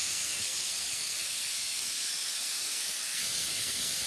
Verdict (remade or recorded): remade